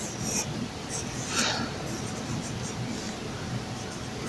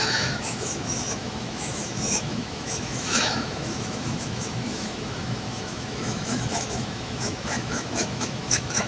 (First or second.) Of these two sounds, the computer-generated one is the second